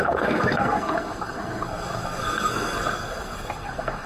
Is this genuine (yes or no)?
no